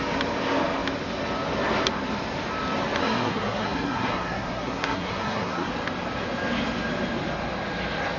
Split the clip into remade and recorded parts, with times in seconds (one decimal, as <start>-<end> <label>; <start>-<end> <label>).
0.0-3.0 recorded; 3.0-5.7 remade; 5.7-8.2 recorded